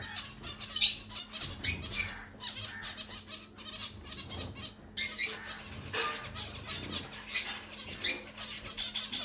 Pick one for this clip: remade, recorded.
recorded